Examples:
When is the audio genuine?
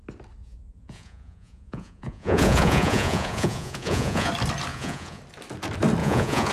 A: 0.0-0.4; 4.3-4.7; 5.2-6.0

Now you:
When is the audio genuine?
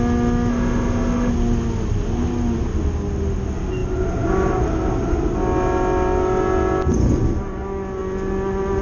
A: 0.0-0.5; 1.3-8.8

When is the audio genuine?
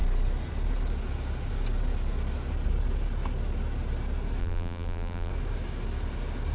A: 0.0-4.4; 5.3-6.5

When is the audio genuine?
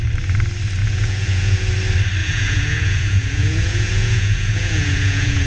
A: 0.0-0.8; 1.7-2.2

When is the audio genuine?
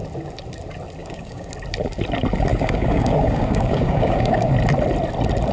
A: 0.0-1.0; 1.5-2.5; 4.5-5.5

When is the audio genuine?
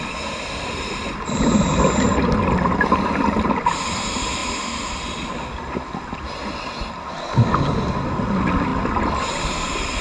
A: 0.0-10.0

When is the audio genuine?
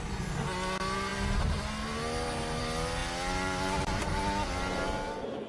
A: 0.0-5.5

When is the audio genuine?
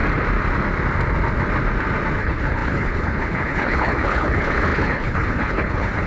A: 0.0-2.2